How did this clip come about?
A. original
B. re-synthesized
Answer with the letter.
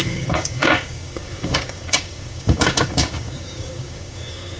B